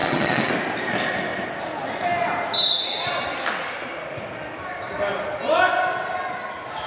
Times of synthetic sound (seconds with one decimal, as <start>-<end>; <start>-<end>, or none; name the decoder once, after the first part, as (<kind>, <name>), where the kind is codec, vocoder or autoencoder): 0.0-0.5 (vocoder, WaveNeXt)